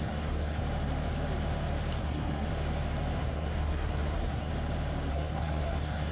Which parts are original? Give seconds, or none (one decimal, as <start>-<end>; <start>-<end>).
0.6-2.0; 2.5-3.2; 4.5-5.1